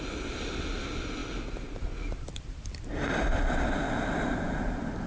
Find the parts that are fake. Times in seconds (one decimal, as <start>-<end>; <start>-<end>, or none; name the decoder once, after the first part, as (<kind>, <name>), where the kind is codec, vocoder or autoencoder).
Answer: none